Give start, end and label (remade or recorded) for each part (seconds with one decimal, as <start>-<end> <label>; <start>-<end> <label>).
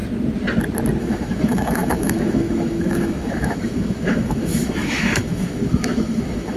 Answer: 0.0-1.0 recorded; 1.0-6.6 remade